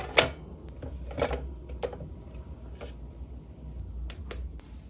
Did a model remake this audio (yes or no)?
no